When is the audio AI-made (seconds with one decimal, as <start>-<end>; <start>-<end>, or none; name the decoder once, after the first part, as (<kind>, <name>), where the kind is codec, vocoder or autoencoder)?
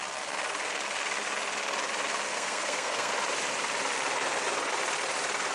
2.3-3.1 (codec, SNAC)